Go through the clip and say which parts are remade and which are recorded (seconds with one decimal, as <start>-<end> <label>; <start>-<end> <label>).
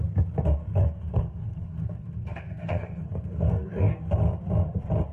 0.0-0.8 recorded; 0.8-3.9 remade; 3.9-5.1 recorded